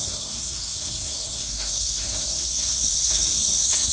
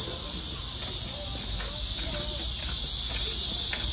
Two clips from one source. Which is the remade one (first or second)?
first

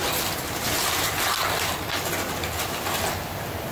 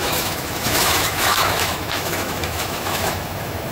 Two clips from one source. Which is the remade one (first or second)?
second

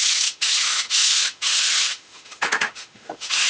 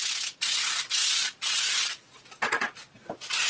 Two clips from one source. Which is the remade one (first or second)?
first